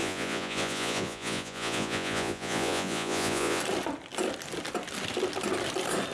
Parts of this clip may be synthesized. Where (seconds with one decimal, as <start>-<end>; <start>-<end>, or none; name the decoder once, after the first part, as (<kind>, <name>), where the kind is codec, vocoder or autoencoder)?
0.0-3.6 (vocoder, Vocos)